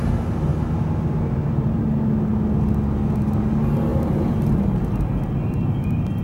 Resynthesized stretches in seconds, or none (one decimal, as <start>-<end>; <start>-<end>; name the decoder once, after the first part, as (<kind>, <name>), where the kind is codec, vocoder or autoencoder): none

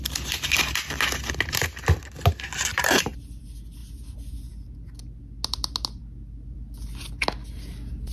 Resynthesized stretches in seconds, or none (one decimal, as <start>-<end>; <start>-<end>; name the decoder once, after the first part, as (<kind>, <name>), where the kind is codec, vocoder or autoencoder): 2.7-3.4 (vocoder, BigVGAN v2)

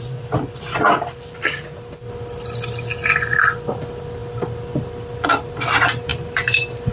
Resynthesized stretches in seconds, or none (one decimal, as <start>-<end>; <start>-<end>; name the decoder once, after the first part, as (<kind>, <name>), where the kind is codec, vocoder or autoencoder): 4.2-5.6 (vocoder, BigVGAN v2)

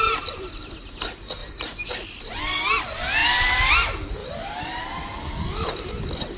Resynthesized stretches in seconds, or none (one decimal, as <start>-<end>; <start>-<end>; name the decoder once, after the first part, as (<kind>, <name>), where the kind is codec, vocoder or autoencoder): 1.4-1.9 (vocoder, BigVGAN v2); 3.2-3.7; 4.2-5.9

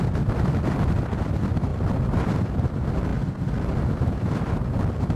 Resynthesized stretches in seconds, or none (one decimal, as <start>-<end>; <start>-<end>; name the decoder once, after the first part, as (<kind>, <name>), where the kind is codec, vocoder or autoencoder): 1.7-2.3 (vocoder, BigVGAN v2)

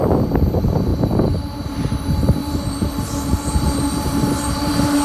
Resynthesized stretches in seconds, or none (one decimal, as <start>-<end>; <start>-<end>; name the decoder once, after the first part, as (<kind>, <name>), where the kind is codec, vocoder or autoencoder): 0.0-2.4 (vocoder, BigVGAN v2); 3.3-5.0

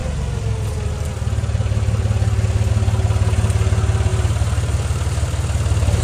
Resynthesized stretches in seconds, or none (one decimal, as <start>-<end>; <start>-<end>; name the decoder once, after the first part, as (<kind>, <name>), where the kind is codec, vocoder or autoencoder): none